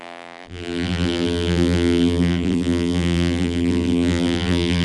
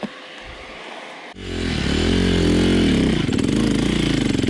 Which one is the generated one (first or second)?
first